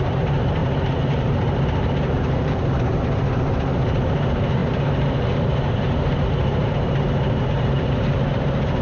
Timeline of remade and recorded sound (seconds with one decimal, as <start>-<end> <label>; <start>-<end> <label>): 0.0-8.8 remade